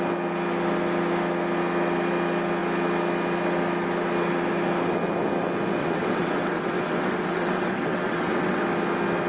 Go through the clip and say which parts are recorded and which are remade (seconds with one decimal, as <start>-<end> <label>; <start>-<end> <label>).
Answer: 0.0-5.8 recorded; 5.8-8.6 remade; 8.6-9.3 recorded